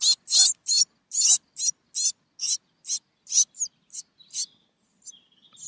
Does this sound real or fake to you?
real